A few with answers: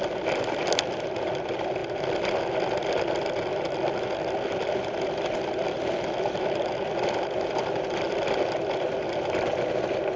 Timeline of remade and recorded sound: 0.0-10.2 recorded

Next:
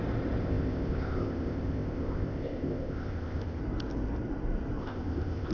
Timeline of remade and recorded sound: 0.0-0.4 recorded; 0.4-3.6 remade; 3.6-4.8 recorded; 4.8-5.5 remade

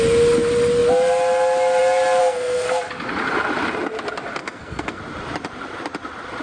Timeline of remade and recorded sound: 0.0-2.2 recorded; 2.2-2.8 remade; 2.8-4.4 recorded; 4.4-5.0 remade; 5.0-6.4 recorded